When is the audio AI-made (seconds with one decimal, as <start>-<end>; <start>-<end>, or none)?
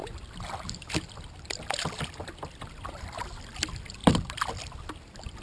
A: 4.0-4.8